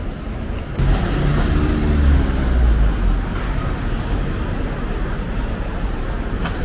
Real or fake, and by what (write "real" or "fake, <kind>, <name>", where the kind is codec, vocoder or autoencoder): real